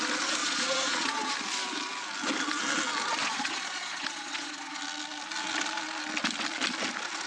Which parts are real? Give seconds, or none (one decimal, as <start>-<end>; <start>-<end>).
0.0-0.4; 1.3-3.2; 4.8-7.3